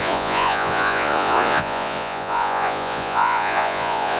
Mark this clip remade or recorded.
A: remade